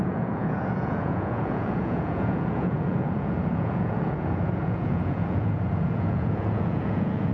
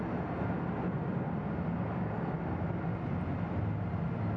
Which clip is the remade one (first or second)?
first